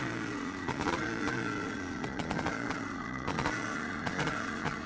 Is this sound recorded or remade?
remade